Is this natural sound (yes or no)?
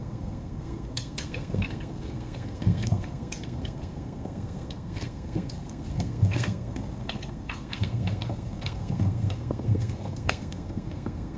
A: no